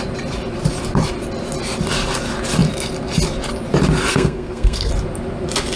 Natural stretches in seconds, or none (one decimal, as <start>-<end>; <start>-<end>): 0.0-4.1; 4.9-5.8